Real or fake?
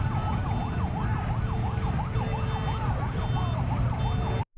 real